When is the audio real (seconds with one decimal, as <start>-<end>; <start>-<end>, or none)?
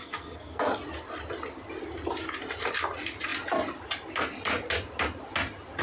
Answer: 0.6-5.8